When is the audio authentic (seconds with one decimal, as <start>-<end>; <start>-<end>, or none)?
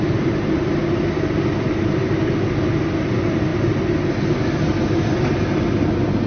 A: 0.0-6.3